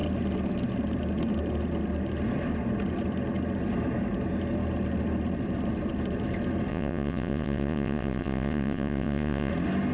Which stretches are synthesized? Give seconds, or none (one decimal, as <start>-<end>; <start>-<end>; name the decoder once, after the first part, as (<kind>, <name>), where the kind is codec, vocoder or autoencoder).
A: 6.7-9.5 (vocoder, WaveNeXt)